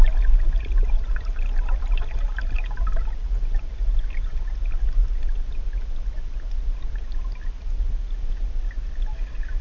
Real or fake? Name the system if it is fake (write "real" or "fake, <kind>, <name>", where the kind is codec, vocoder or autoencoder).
real